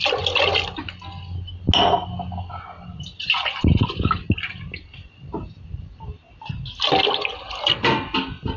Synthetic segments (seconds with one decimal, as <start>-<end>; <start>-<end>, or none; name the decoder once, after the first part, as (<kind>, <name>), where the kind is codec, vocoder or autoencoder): 5.3-6.3 (vocoder, BigVGAN v2)